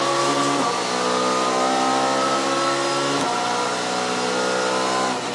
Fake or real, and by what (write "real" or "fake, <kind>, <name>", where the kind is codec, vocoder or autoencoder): real